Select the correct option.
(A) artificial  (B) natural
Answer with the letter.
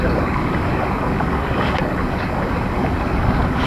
A